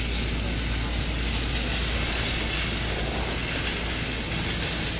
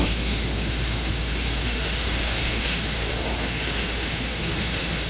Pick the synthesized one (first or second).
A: second